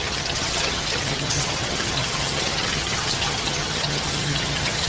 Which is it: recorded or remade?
remade